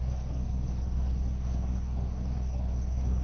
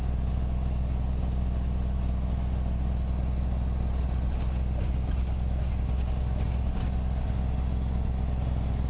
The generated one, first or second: first